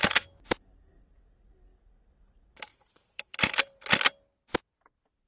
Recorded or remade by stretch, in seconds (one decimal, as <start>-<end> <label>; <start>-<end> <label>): 0.0-1.7 recorded; 1.7-3.8 remade; 3.8-5.3 recorded